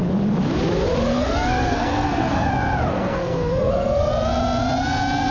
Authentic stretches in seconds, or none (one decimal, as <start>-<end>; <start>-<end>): 0.0-1.1; 2.5-2.9; 4.1-5.3